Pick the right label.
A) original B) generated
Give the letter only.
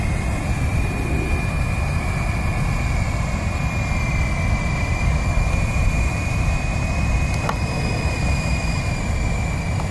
A